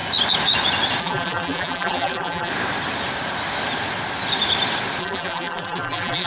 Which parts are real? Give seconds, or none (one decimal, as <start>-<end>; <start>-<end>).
0.0-1.0; 2.5-5.0